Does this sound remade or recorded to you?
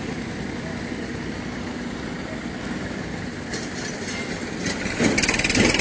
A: recorded